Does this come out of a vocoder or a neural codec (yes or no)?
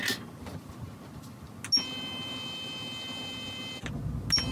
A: no